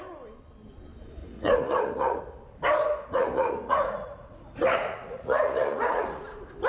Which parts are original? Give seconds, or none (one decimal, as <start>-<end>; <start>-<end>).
0.0-1.2; 2.2-2.9; 6.2-6.7